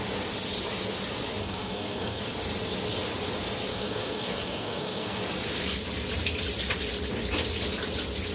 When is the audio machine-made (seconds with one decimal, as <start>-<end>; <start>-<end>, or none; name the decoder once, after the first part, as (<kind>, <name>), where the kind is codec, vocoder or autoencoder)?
1.4-2.2 (codec, SNAC); 3.7-5.2